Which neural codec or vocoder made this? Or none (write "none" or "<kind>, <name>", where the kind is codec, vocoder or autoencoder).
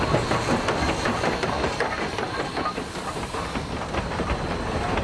none